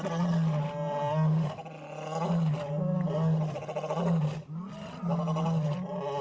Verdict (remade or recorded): recorded